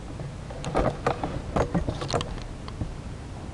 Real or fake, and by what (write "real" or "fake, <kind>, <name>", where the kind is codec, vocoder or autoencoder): real